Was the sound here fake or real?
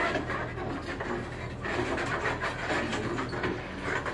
real